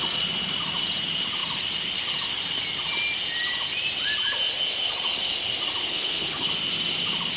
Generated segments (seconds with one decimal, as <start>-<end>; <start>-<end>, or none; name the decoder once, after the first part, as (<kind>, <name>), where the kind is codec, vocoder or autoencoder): 5.9-6.5 (codec, HILCodec)